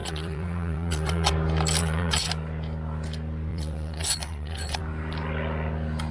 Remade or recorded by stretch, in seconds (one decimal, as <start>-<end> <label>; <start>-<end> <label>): 0.0-1.3 remade; 1.3-1.8 recorded; 1.8-2.3 remade; 2.3-3.5 recorded; 3.5-4.8 remade; 4.8-6.1 recorded